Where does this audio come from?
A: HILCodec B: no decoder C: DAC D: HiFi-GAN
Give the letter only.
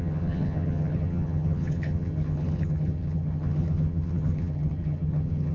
D